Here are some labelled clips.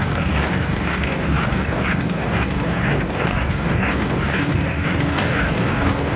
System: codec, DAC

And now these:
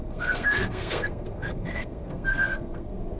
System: codec, SNAC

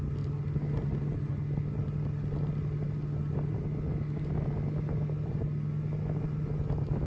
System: none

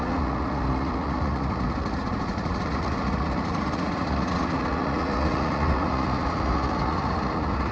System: vocoder, Vocos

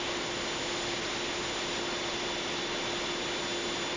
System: none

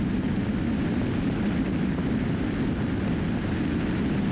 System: none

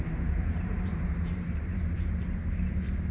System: vocoder, BigVGAN v2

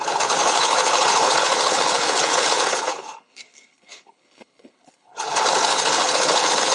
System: codec, HILCodec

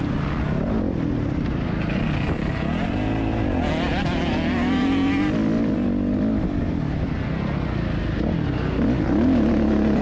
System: none